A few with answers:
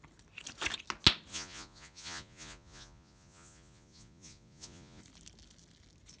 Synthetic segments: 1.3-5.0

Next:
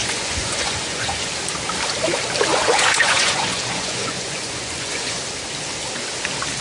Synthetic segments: 0.0-1.3; 2.5-5.2